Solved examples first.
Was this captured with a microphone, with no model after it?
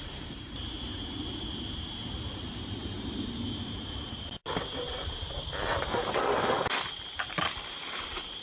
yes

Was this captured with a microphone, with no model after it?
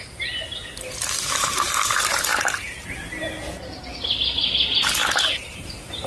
yes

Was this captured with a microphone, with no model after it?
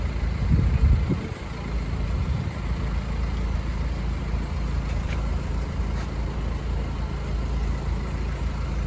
yes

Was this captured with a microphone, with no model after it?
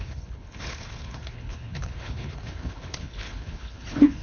no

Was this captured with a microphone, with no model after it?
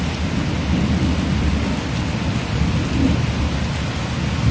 yes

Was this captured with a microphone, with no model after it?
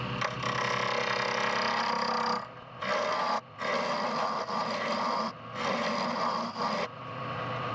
yes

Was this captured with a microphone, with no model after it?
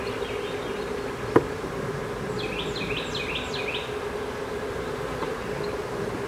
yes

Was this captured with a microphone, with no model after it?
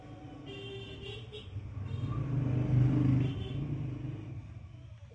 yes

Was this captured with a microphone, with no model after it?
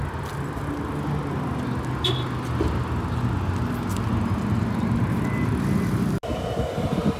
yes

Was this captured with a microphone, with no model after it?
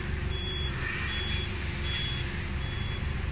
yes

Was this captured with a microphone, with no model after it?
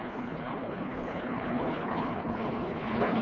no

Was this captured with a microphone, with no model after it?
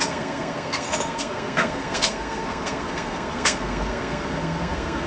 no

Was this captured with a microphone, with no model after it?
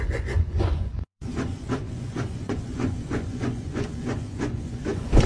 no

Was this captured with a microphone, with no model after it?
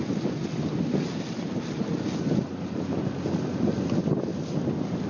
yes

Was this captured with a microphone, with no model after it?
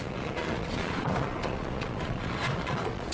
no